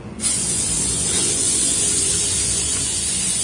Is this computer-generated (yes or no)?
yes